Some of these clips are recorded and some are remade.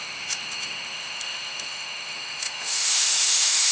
remade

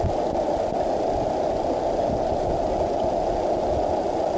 recorded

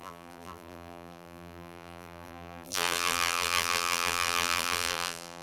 remade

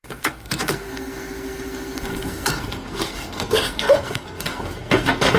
remade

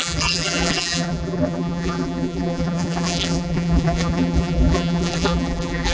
remade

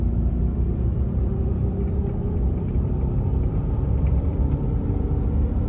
remade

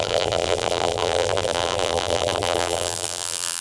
remade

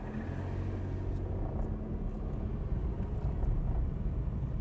recorded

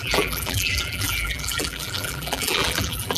remade